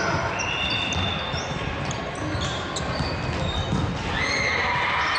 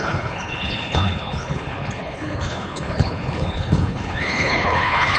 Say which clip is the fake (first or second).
second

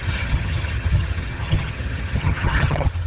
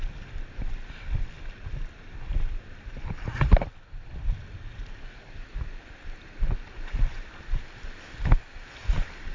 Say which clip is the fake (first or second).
first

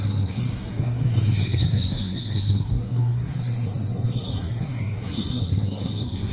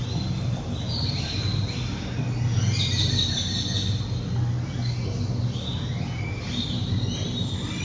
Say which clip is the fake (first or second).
first